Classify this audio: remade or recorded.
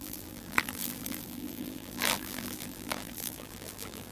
remade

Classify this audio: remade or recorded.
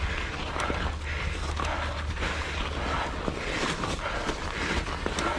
recorded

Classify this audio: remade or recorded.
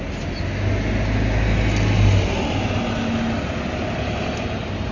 recorded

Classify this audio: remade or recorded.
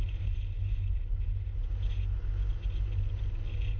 recorded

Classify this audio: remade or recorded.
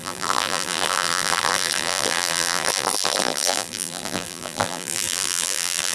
remade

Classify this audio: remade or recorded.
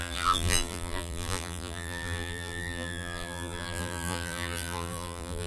remade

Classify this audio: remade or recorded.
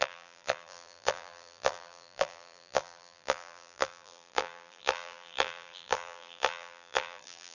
remade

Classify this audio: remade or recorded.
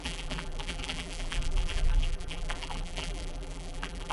remade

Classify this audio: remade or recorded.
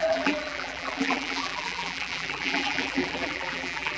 remade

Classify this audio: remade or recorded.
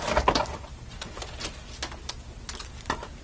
recorded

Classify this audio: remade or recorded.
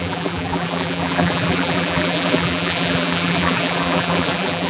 remade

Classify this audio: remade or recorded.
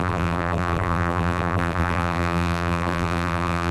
remade